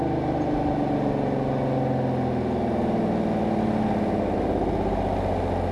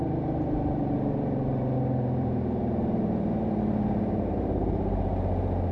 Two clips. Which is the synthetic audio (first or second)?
second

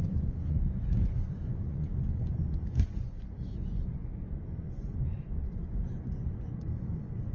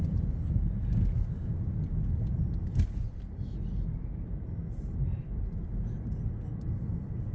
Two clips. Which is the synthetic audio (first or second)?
first